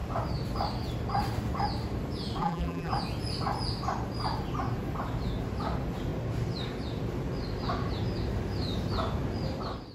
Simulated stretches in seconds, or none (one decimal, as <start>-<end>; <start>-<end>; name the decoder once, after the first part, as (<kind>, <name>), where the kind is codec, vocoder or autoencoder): 2.4-2.9 (vocoder, BigVGAN v2)